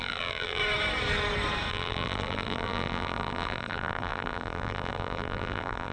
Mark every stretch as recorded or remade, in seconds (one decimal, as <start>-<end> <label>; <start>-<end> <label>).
0.0-0.6 remade; 0.6-1.7 recorded; 1.7-5.9 remade